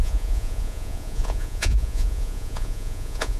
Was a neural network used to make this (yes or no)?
yes